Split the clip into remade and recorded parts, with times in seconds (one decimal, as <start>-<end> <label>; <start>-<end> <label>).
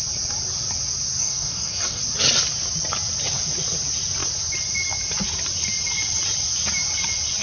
0.0-1.2 recorded; 1.2-2.0 remade; 2.0-7.4 recorded